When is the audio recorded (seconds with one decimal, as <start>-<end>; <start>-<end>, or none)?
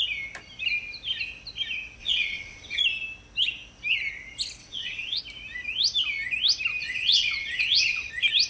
0.0-2.0; 2.8-4.6; 5.2-6.8; 8.1-8.5